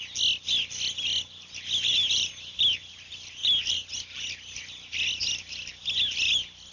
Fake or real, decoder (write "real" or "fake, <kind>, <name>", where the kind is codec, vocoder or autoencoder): real